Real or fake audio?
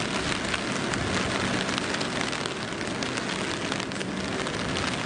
real